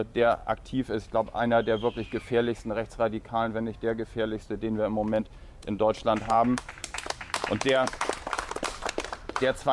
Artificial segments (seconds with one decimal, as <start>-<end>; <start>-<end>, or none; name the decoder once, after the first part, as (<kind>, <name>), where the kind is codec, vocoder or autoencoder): 0.0-0.4 (vocoder, BigVGAN v2); 5.2-6.8; 7.4-9.7